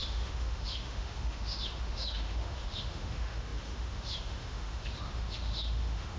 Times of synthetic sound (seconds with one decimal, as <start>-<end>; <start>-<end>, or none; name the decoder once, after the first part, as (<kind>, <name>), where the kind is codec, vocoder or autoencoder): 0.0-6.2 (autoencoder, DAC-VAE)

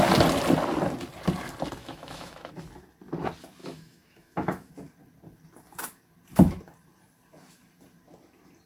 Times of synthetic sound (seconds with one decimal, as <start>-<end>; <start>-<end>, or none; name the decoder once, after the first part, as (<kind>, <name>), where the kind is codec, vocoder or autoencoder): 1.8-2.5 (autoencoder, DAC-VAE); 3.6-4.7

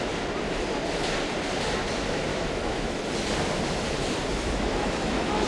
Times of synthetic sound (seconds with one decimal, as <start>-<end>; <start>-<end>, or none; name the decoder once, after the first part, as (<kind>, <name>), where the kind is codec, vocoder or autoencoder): 2.3-3.0 (autoencoder, DAC-VAE); 4.3-5.5

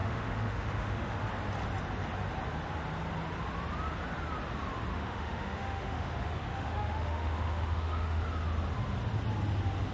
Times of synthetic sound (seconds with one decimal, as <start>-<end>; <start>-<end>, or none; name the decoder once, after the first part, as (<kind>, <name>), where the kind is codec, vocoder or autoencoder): 0.0-1.2 (autoencoder, DAC-VAE); 4.9-8.2

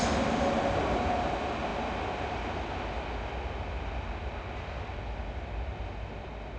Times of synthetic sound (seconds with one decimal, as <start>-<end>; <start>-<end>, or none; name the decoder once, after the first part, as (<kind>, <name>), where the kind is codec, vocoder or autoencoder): none